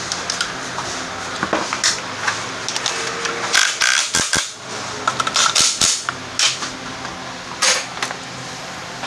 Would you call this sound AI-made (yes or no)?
no